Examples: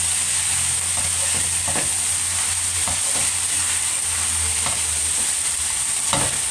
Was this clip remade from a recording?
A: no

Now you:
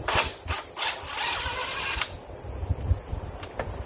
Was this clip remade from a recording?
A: no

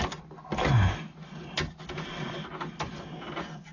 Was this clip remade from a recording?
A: no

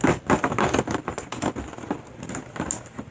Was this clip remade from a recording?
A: no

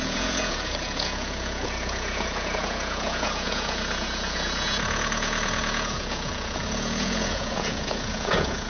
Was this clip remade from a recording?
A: yes